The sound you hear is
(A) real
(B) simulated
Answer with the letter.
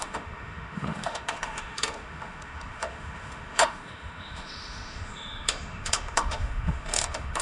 B